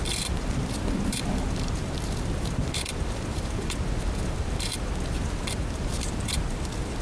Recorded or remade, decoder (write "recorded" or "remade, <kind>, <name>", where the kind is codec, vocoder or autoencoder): remade, vocoder, BigVGAN v2